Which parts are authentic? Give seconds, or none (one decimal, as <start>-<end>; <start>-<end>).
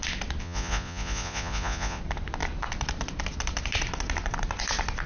0.0-0.4; 2.0-5.1